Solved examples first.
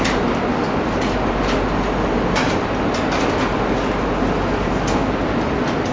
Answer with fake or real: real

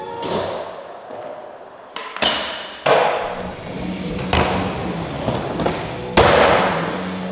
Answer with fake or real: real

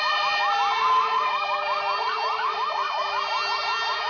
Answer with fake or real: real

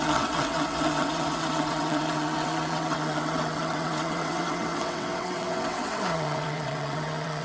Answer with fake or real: fake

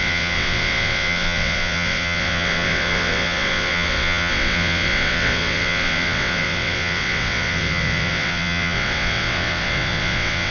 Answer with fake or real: fake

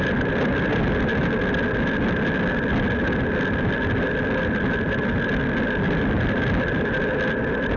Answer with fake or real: real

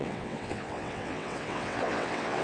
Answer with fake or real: fake